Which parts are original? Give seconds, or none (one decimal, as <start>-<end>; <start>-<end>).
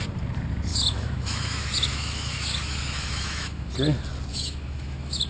0.0-0.7; 3.7-4.3